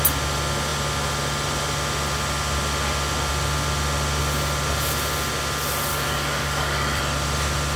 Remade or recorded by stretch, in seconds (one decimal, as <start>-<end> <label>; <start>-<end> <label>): 0.0-5.9 recorded; 5.9-7.0 remade; 7.0-7.8 recorded